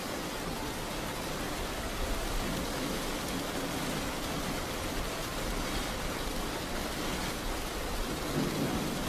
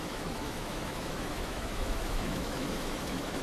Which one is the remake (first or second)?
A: second